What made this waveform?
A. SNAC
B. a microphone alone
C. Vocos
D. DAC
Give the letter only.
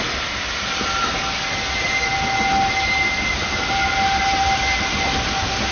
B